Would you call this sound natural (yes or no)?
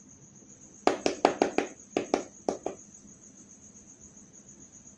yes